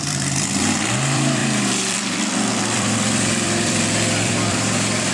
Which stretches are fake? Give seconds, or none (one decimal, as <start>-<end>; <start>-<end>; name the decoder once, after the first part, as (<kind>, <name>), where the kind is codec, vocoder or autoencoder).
0.0-5.1 (vocoder, BigVGAN v2)